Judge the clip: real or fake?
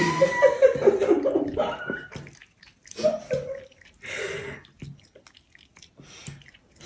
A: real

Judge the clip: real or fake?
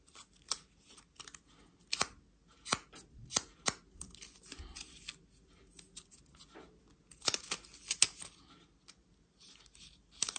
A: real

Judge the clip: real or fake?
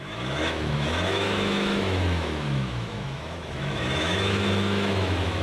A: fake